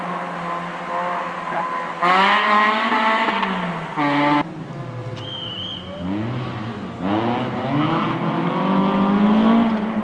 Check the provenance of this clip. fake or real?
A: real